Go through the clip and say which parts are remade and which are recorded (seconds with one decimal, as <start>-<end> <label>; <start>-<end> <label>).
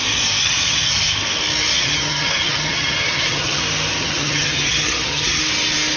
0.0-0.4 recorded; 0.4-0.9 remade; 0.9-1.7 recorded; 1.7-3.6 remade; 3.6-4.0 recorded; 4.0-5.4 remade; 5.4-6.0 recorded